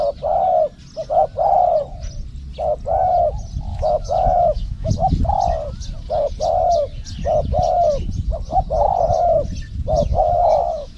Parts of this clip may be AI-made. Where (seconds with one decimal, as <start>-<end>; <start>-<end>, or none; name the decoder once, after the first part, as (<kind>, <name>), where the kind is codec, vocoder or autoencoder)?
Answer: 3.7-4.9 (autoencoder, DAC-VAE); 10.1-11.0